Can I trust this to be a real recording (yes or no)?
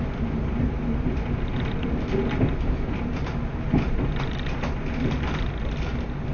yes